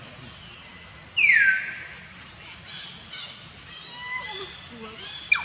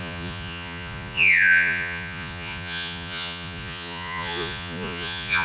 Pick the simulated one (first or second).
second